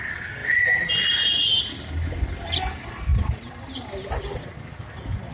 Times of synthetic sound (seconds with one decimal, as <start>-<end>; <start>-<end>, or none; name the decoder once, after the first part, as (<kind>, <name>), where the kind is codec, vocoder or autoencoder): 0.4-0.9 (vocoder, BigVGAN v2); 3.1-3.7